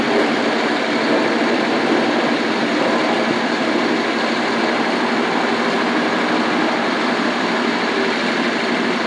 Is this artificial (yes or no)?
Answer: no